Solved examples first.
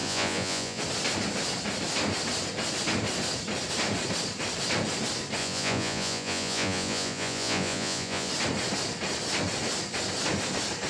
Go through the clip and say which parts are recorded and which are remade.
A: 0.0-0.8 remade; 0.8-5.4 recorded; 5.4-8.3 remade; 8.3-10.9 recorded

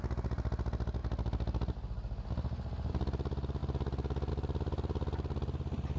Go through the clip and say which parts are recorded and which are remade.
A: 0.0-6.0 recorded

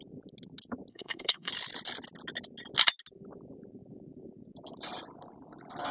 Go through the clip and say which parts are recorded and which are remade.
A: 0.0-0.9 recorded; 0.9-1.5 remade; 1.5-5.9 recorded

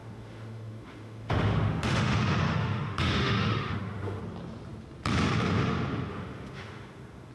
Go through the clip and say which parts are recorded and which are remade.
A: 0.0-4.2 remade; 4.2-6.1 recorded; 6.1-7.3 remade

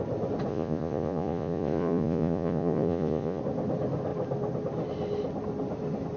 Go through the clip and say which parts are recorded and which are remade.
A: 0.0-0.5 recorded; 0.5-3.4 remade; 3.4-6.2 recorded

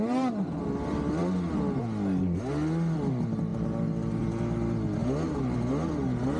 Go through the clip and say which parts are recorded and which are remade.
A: 0.0-6.4 recorded